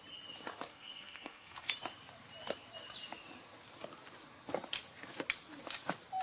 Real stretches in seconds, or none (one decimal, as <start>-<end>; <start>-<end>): 0.0-0.7; 1.7-6.2

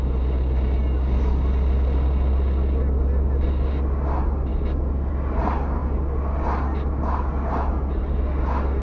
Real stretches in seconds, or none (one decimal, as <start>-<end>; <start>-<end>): 0.0-8.8

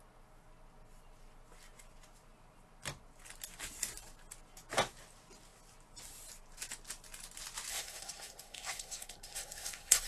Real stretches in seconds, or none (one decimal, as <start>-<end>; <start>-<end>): 0.0-7.7

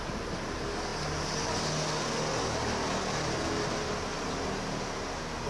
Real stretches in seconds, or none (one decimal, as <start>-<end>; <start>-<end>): 0.0-5.5